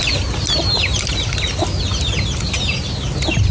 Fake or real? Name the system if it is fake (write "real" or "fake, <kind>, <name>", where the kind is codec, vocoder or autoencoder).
real